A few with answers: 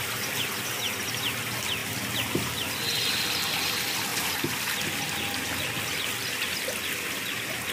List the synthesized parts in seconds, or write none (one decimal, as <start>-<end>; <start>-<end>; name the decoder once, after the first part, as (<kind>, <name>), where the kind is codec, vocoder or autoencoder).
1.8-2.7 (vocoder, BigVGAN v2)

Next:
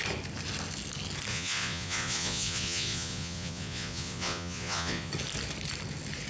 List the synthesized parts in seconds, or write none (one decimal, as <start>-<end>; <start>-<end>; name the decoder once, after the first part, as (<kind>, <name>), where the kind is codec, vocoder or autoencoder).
1.3-5.1 (vocoder, Vocos)

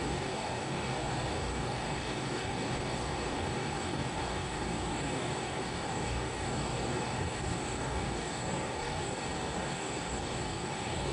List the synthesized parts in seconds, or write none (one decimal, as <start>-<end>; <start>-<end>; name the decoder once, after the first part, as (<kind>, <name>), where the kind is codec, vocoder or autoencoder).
0.0-11.1 (codec, DAC)

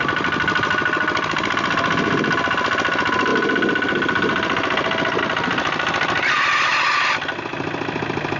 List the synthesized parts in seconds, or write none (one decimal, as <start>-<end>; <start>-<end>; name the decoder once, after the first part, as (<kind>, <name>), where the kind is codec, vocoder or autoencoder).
none

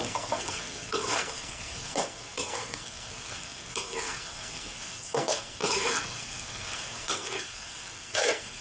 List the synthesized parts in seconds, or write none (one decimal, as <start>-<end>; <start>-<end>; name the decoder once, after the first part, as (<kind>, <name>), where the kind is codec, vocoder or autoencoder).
0.0-8.6 (codec, SNAC)